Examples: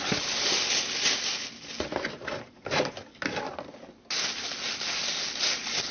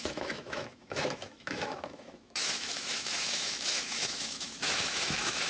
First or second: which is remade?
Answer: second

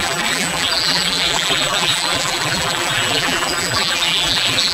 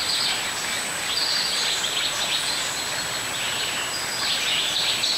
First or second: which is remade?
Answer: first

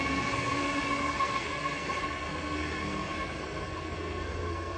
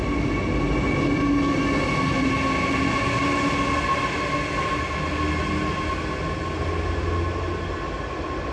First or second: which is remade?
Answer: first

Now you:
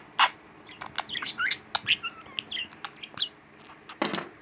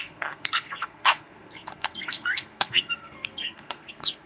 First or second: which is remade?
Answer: second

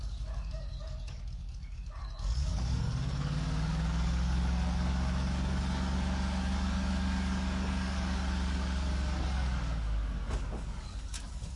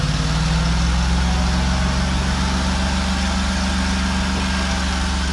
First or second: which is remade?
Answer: first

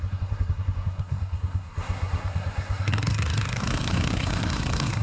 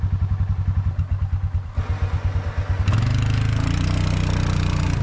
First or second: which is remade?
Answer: first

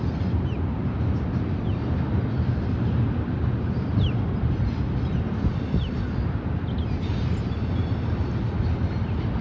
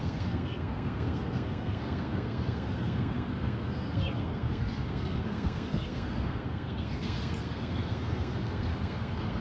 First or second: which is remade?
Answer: second